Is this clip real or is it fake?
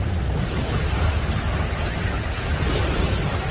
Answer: real